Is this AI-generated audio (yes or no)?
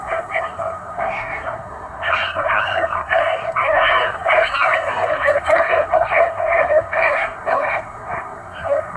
yes